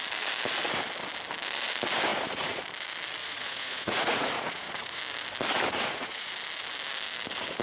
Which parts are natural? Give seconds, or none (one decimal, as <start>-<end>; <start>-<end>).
0.0-2.1; 2.6-3.2; 5.0-5.7; 6.3-7.6